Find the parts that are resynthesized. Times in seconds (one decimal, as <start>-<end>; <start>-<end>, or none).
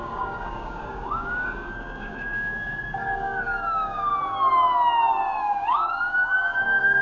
0.0-4.1; 5.4-7.0